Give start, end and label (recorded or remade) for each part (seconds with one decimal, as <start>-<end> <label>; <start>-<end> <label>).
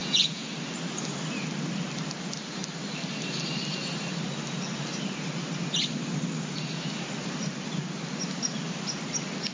0.0-0.5 remade; 0.5-9.5 recorded